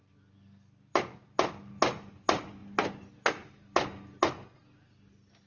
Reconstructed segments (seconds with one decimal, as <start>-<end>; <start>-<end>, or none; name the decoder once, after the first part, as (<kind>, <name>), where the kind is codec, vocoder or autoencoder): none

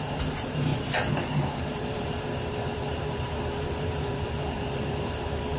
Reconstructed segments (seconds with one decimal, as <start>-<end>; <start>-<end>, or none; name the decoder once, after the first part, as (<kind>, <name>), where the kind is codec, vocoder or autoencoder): 0.0-0.7 (vocoder, BigVGAN v2); 1.6-5.6

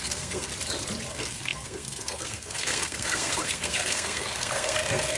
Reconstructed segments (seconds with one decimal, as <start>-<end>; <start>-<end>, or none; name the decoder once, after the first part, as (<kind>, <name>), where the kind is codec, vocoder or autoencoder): 0.0-0.5 (codec, SNAC); 1.1-5.2

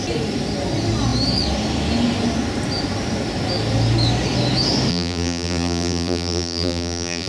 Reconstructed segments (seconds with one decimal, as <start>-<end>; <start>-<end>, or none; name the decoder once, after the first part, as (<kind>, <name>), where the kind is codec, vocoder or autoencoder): 4.9-7.3 (vocoder, BigVGAN v2)

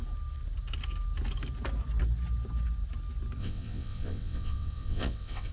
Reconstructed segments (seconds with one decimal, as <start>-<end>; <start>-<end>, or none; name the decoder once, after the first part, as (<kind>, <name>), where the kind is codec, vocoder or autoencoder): 3.4-5.5 (vocoder, WaveNeXt)

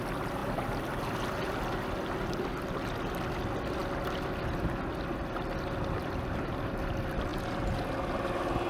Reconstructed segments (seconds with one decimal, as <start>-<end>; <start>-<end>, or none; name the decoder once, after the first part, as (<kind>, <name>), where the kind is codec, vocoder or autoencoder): none

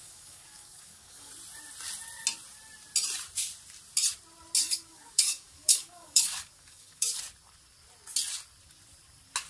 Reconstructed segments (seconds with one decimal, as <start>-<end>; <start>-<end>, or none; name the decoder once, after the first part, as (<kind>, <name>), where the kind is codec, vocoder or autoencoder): 0.0-1.3 (codec, DAC); 4.6-7.2

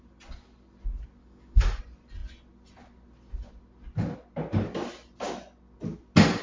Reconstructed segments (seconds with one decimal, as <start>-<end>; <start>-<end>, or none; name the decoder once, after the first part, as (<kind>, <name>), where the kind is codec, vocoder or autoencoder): 1.2-1.8 (codec, DAC)